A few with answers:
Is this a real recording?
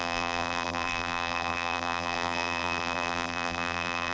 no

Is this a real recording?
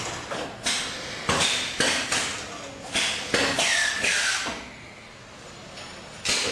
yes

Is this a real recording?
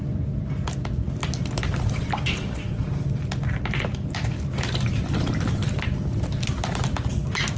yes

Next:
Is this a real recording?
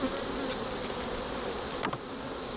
yes